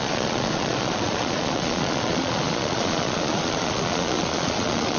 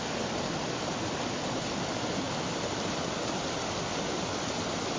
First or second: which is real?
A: second